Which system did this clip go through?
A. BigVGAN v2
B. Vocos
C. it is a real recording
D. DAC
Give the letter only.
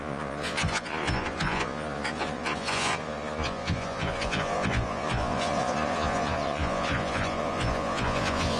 B